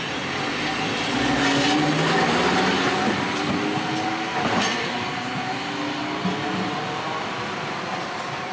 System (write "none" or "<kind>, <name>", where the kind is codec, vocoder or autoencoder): none